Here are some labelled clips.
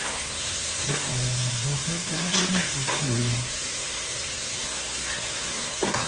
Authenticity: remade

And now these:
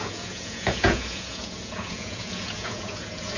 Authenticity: remade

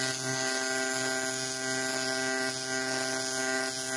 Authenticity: recorded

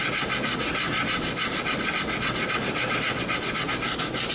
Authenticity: recorded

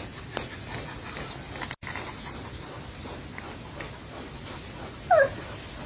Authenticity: recorded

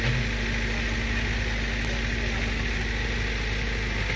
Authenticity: recorded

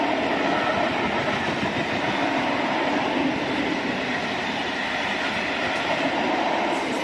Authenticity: recorded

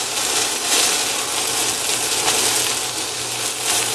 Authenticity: recorded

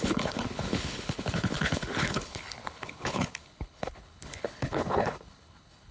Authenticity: remade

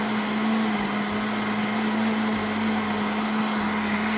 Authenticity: recorded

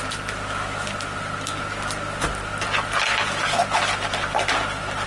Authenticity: recorded